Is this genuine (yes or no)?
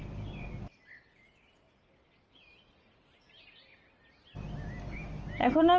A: yes